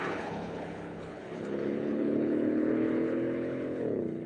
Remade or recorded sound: remade